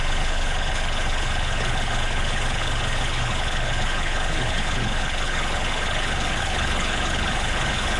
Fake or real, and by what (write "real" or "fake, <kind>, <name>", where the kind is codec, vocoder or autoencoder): fake, codec, HILCodec